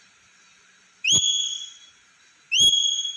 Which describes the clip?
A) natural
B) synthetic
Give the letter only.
A